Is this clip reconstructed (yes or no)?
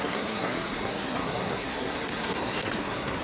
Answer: yes